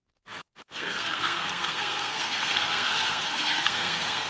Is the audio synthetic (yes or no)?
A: yes